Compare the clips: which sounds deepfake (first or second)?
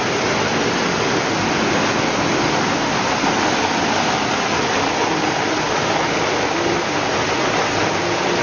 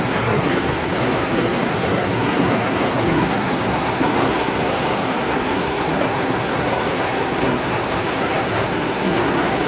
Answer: second